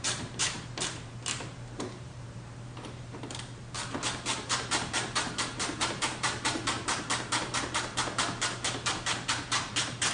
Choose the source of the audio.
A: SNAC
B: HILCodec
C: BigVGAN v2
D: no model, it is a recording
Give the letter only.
C